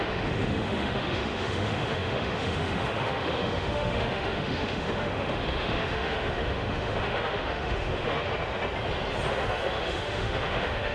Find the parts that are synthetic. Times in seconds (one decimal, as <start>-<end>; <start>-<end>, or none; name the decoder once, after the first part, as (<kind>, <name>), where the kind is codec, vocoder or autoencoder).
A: 0.0-8.3 (autoencoder, DAC-VAE); 9.3-10.9